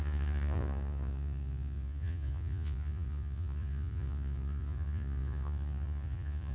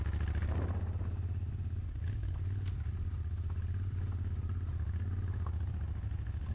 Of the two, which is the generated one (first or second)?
first